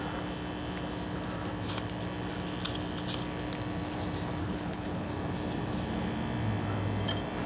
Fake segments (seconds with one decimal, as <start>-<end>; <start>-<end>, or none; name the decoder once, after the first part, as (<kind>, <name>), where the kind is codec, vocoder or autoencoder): 4.4-5.1 (codec, HILCodec)